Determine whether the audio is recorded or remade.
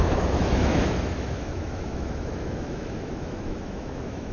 remade